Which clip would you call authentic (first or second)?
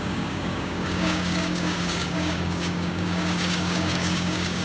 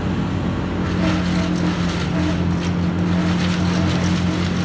second